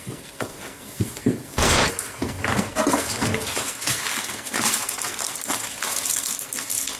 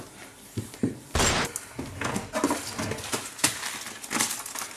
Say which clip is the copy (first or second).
first